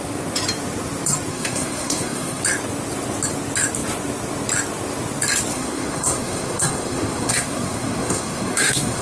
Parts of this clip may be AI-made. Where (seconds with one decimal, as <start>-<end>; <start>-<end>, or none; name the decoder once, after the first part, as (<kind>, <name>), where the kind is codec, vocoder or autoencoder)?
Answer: 1.3-2.4 (codec, SNAC); 5.5-9.0